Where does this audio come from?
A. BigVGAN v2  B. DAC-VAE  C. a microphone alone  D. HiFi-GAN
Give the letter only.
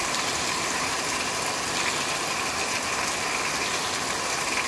C